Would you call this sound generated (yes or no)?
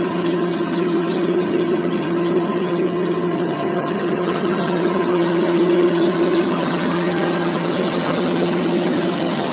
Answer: yes